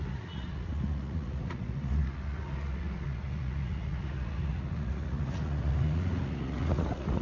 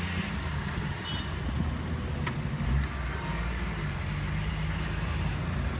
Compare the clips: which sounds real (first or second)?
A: second